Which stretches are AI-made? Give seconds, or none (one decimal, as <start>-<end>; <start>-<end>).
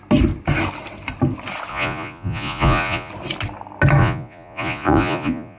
1.7-3.1; 4.0-5.6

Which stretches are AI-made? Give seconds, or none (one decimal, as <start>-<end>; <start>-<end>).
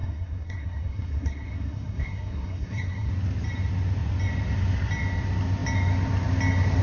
0.0-3.1